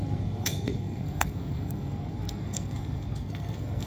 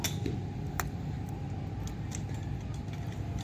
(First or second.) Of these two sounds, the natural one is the second